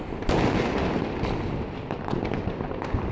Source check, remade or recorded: recorded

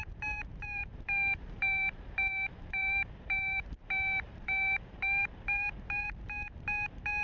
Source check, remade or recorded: remade